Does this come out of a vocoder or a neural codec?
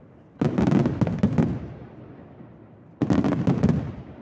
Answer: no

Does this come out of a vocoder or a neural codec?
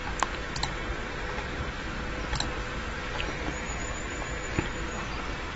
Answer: no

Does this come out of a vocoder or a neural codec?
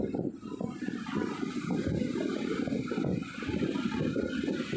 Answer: no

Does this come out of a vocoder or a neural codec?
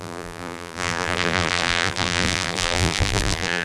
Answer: yes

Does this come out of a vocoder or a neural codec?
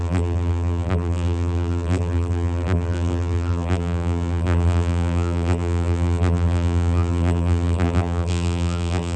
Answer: yes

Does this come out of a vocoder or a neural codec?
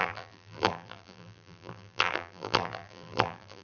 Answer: yes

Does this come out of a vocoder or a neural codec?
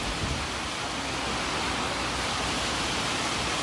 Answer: no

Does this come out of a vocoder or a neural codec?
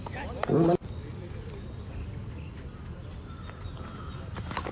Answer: no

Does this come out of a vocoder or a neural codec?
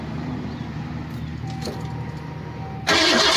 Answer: no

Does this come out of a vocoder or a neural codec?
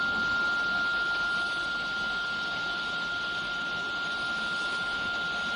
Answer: no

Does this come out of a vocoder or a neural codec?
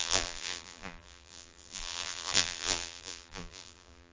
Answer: yes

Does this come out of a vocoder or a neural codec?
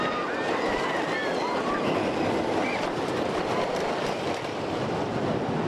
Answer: yes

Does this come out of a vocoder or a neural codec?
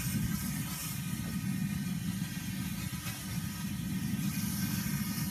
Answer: no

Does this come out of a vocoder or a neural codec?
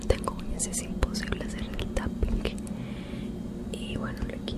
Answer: no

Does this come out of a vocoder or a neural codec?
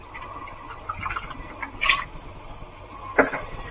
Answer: yes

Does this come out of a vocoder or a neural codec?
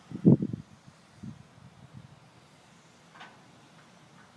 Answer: no